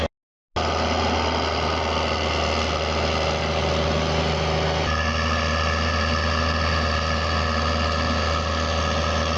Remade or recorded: recorded